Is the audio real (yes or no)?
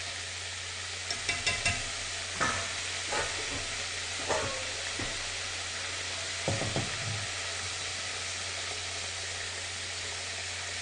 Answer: yes